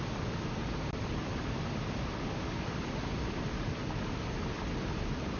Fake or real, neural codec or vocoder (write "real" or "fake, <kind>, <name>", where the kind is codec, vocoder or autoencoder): real